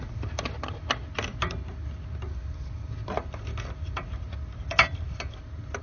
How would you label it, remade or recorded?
recorded